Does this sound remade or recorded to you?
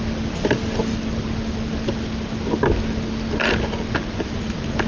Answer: recorded